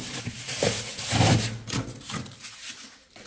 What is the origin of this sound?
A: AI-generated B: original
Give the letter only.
B